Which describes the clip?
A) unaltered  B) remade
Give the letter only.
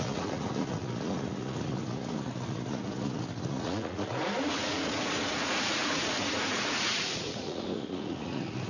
B